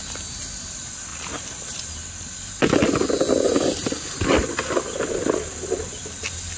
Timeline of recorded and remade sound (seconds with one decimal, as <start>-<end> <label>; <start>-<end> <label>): 0.0-6.6 recorded